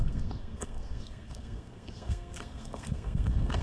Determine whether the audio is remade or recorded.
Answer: remade